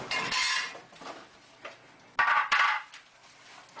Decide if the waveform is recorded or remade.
recorded